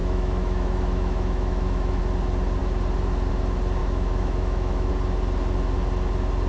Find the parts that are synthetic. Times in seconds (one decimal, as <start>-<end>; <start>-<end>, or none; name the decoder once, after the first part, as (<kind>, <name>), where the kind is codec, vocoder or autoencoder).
0.0-2.0 (autoencoder, DAC-VAE); 3.8-4.9